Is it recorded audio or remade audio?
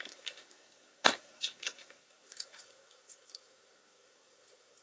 remade